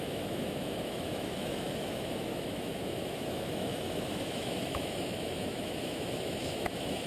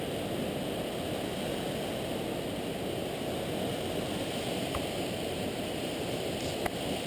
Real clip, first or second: second